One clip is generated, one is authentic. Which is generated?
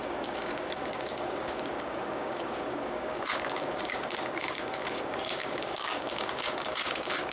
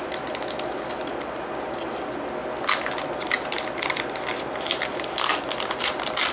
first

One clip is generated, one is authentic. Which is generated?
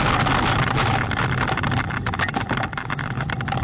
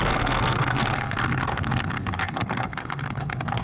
second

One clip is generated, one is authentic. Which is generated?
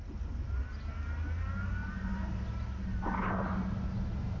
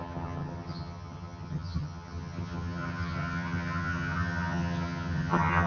second